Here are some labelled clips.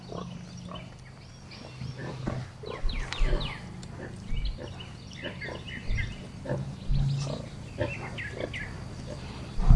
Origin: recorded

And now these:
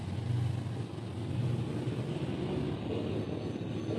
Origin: recorded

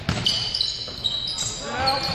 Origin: recorded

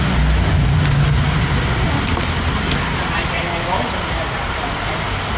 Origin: recorded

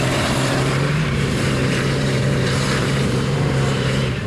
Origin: remade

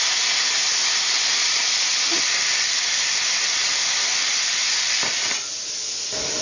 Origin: remade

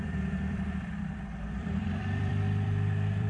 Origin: remade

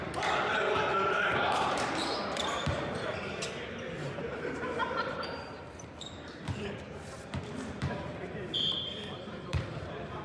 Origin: remade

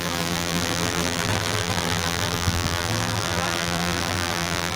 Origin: remade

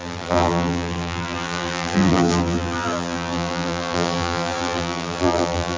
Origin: remade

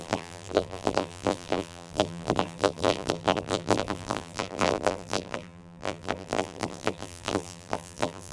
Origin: remade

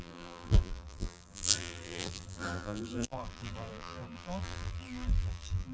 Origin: remade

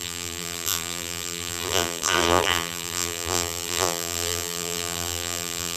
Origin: remade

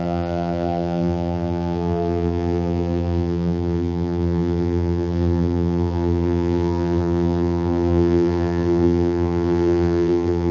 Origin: remade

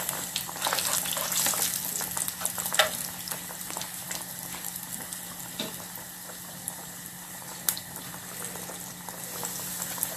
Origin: recorded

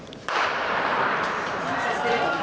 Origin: remade